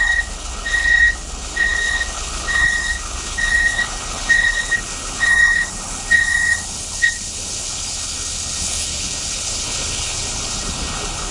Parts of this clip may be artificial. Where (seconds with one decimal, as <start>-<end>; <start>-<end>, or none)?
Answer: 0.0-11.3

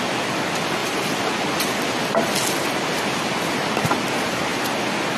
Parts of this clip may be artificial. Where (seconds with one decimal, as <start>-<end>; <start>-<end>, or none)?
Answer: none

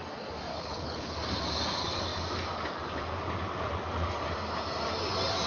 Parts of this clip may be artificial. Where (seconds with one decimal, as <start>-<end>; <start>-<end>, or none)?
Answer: 0.5-1.1

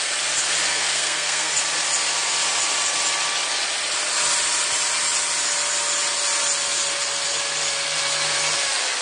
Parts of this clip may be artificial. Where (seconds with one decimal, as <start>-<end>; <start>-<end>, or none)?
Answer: 0.7-1.5